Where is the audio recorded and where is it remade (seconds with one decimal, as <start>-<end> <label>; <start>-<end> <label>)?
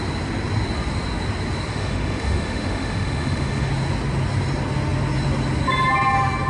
0.0-1.7 recorded; 1.7-3.7 remade; 3.7-6.5 recorded